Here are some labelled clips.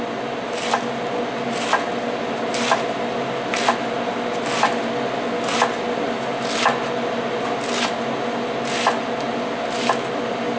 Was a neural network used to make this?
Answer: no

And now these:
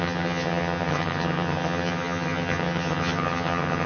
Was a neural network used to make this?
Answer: yes